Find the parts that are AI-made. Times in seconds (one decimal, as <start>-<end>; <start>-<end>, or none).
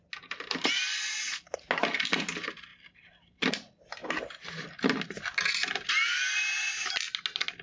2.7-3.5